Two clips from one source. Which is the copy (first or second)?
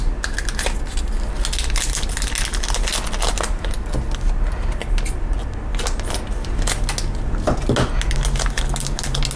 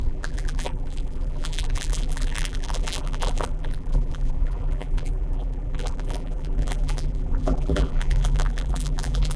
second